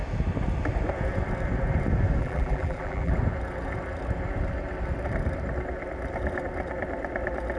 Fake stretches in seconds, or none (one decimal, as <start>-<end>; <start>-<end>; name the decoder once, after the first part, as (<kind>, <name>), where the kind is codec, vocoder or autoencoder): 2.2-3.1 (vocoder, BigVGAN v2)